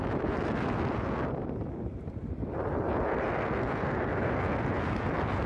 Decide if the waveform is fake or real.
real